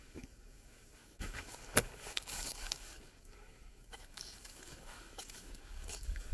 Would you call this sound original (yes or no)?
no